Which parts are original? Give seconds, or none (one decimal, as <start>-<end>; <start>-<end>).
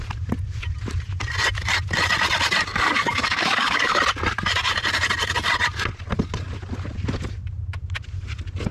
0.0-2.7; 4.0-8.7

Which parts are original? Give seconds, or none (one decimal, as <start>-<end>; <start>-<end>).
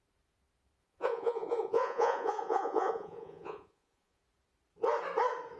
0.0-0.8; 4.2-5.6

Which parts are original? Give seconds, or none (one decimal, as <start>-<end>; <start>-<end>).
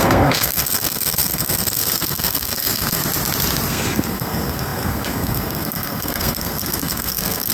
3.0-3.7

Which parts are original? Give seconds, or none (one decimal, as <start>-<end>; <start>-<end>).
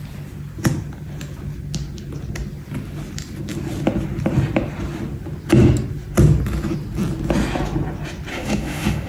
0.0-8.3